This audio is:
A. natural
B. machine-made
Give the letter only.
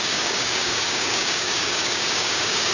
B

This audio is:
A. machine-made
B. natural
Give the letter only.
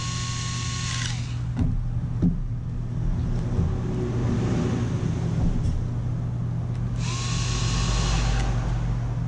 B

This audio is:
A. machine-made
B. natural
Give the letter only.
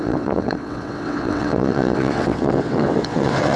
A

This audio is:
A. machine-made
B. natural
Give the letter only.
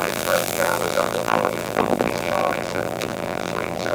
A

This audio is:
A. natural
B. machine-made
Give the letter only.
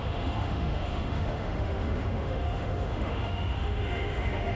B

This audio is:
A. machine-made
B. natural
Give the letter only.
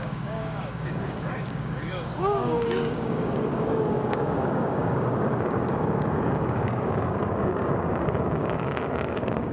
A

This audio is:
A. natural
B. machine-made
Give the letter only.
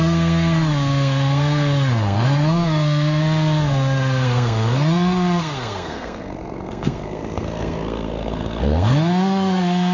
B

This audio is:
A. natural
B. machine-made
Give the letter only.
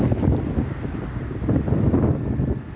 A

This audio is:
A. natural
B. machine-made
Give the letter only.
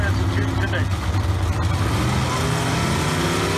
A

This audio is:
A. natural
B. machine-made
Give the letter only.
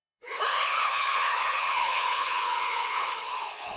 B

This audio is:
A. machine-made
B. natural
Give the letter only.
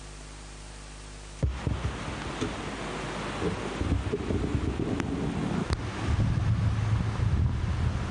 B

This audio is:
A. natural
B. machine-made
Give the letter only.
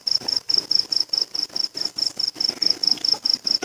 A